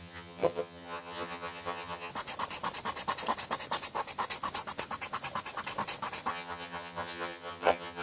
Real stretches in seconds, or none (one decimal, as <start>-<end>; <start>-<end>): 2.1-6.3